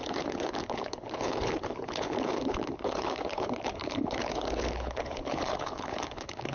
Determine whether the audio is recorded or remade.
remade